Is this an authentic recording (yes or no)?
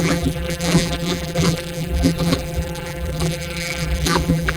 no